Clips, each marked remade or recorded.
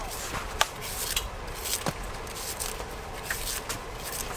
recorded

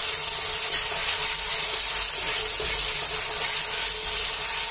recorded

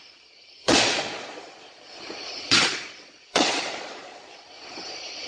remade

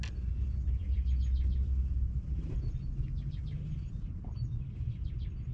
recorded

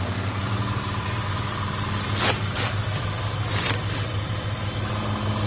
recorded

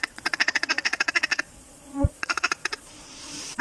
remade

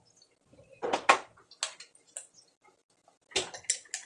recorded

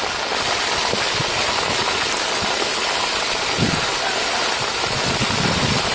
recorded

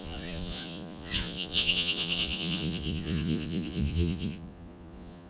remade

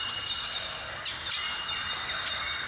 recorded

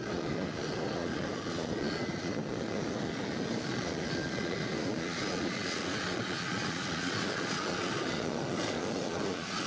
remade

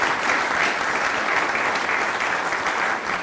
recorded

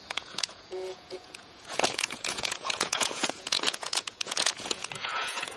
remade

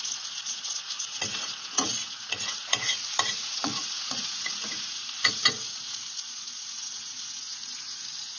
remade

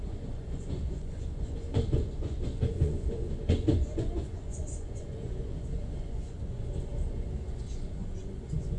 remade